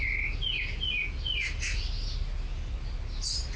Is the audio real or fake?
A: real